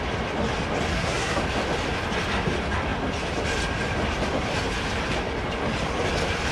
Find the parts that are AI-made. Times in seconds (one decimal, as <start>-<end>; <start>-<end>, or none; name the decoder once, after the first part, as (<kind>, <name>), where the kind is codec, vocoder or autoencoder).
0.9-1.4 (codec, SNAC)